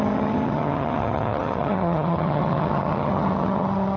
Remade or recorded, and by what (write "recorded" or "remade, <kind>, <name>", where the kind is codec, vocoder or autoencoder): remade, vocoder, HiFi-GAN